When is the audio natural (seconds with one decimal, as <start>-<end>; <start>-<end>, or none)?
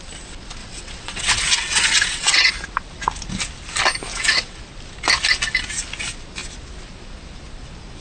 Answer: 0.0-0.6; 2.5-4.1; 4.6-8.0